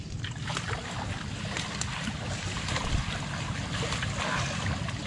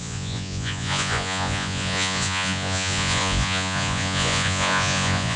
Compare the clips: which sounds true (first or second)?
first